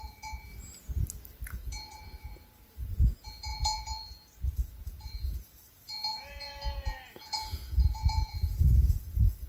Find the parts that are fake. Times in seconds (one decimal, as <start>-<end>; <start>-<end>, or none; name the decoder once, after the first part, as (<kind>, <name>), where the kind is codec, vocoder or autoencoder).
0.0-0.5 (vocoder, Vocos); 1.6-9.5